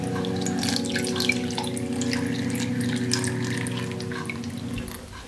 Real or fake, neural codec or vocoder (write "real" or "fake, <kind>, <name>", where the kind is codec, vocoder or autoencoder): real